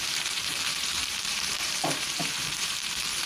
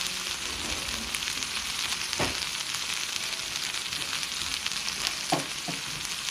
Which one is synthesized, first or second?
first